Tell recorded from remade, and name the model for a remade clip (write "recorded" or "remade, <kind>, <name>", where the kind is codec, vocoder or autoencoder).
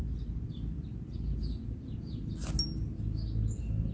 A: recorded